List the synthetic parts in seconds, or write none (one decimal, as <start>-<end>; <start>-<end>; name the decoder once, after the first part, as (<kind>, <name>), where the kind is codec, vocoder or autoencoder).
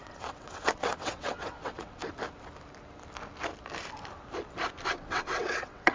0.0-2.0 (vocoder, WaveNeXt); 4.9-5.9